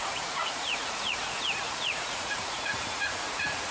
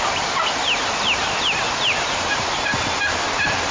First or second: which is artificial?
first